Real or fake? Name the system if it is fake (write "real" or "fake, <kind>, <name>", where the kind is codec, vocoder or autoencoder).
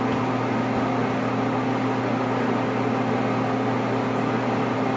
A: real